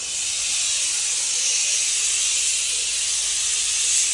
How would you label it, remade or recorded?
recorded